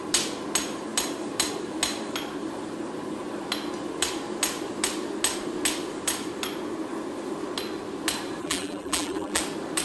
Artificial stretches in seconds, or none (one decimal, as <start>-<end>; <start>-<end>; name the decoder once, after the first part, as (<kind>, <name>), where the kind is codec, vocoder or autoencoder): 8.4-9.4 (vocoder, BigVGAN v2)